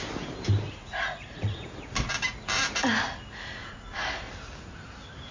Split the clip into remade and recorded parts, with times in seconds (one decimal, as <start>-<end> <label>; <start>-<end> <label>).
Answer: 0.0-0.8 recorded; 0.8-1.7 remade; 1.7-3.6 recorded; 3.6-4.2 remade; 4.2-5.3 recorded